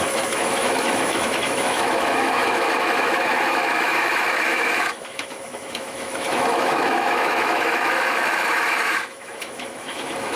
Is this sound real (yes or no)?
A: no